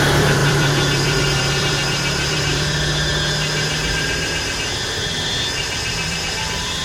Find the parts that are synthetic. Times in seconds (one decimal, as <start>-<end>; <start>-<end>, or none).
0.0-3.1; 3.9-6.8